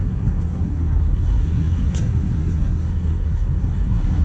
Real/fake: fake